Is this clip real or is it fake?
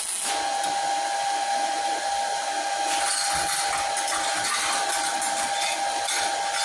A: real